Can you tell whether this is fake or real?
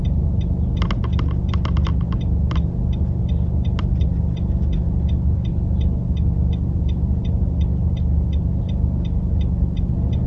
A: real